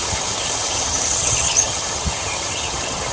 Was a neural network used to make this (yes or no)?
yes